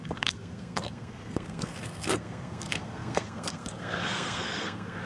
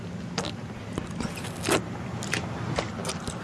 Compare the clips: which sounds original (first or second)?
second